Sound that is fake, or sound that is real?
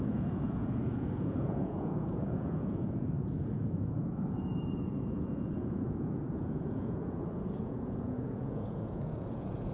fake